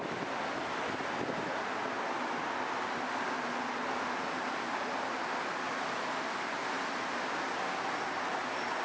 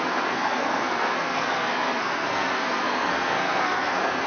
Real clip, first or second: first